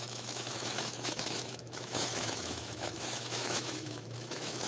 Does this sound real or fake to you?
fake